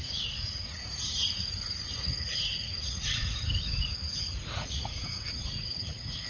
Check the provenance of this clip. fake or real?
fake